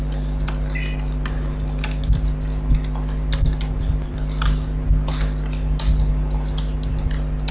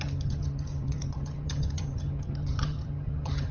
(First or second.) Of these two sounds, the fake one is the second